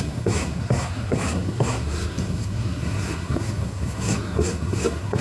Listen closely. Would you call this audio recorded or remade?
remade